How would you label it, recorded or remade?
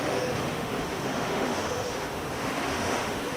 remade